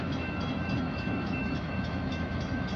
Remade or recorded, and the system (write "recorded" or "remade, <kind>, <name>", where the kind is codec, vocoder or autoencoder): remade, autoencoder, DAC-VAE